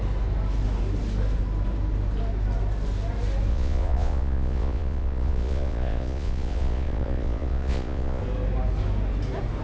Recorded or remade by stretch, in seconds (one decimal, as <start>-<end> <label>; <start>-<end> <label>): 0.0-3.5 recorded; 3.5-8.2 remade; 8.2-9.6 recorded